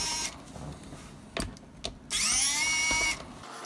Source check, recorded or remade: recorded